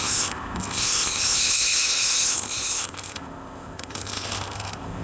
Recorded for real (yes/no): no